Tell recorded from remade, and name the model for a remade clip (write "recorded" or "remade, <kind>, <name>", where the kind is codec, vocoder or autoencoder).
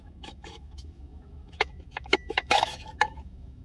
remade, autoencoder, DAC-VAE